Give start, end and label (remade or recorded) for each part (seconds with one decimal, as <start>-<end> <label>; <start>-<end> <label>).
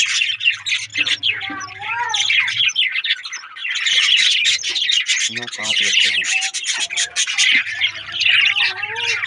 0.0-0.9 recorded; 0.9-2.0 remade; 2.0-3.6 recorded; 3.6-6.0 remade; 6.0-9.3 recorded